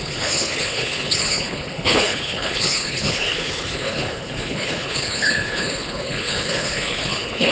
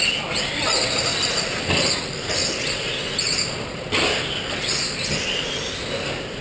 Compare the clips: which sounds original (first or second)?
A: second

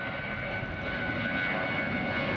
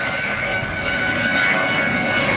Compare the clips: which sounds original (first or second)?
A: first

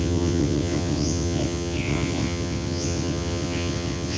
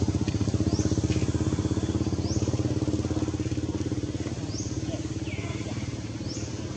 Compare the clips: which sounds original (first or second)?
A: second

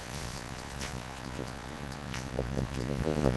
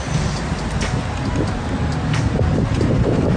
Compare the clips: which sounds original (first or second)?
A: second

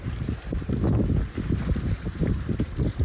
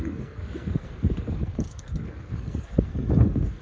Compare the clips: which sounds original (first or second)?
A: first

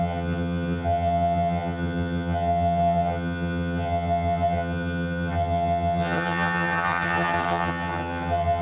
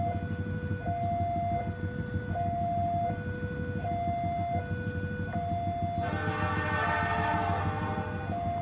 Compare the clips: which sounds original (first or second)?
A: second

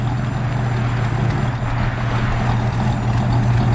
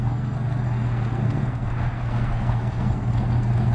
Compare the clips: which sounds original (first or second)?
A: first